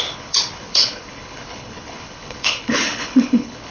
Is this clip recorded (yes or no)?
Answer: no